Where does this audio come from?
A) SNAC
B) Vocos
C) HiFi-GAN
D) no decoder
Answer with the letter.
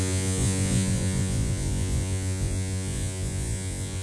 B